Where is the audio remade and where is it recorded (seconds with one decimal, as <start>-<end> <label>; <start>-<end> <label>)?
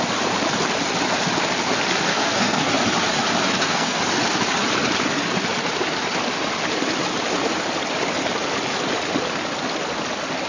0.0-2.1 recorded; 2.1-2.7 remade; 2.7-3.5 recorded; 3.5-4.0 remade; 4.0-10.5 recorded